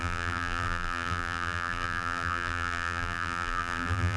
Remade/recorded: remade